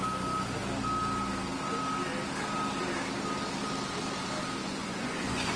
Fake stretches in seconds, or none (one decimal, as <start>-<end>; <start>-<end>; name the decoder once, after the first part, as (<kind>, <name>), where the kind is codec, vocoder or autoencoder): 4.6-5.6 (vocoder, Vocos)